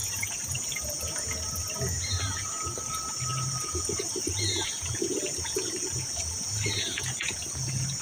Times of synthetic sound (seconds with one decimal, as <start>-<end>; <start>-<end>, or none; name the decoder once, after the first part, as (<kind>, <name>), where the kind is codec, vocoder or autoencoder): 0.0-8.0 (vocoder, Vocos)